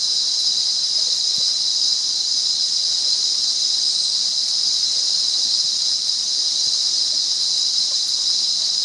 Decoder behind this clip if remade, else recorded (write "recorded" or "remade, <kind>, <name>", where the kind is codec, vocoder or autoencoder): recorded